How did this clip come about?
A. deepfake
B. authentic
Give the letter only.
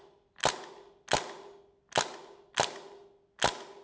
B